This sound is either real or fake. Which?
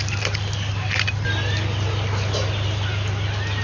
real